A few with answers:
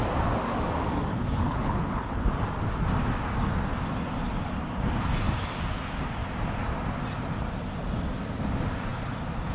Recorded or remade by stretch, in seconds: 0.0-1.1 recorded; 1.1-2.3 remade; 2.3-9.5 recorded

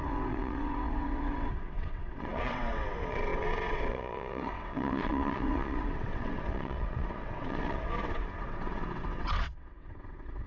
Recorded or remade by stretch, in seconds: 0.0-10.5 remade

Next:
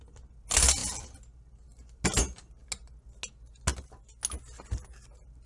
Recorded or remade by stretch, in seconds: 0.0-5.5 recorded

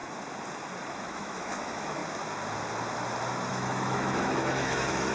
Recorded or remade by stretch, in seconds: 0.0-0.9 recorded; 0.9-2.0 remade; 2.0-3.5 recorded; 3.5-5.1 remade